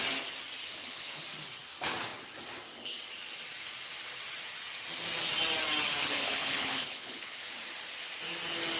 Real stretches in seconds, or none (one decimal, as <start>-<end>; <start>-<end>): 0.0-0.6; 1.2-6.0; 7.4-8.8

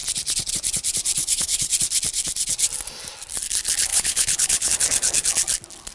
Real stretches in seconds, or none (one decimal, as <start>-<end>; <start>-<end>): 0.0-1.2; 1.7-3.9; 4.7-5.9

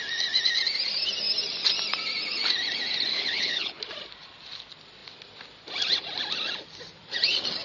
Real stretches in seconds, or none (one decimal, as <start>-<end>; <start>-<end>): 0.0-3.1; 3.8-7.6

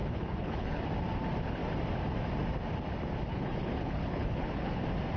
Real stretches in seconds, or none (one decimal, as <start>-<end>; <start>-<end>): 0.8-3.3; 4.8-5.2

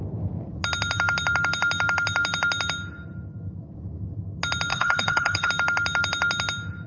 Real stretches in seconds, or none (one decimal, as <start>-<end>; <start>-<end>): 0.0-4.7; 5.5-6.9